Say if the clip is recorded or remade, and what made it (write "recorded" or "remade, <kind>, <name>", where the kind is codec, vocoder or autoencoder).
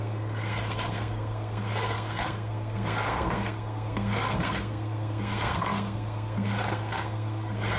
remade, codec, SNAC